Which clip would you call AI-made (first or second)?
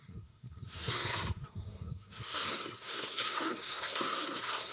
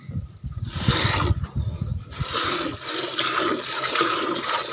first